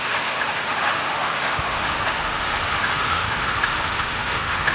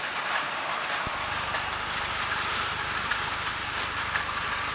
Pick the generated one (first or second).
first